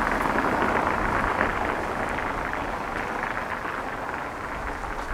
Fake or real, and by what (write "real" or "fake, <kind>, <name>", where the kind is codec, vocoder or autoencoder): real